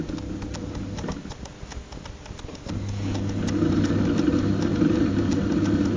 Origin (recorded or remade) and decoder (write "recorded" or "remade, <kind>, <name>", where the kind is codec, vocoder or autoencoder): recorded